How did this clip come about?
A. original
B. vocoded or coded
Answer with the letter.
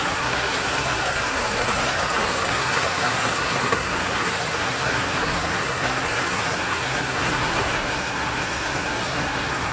B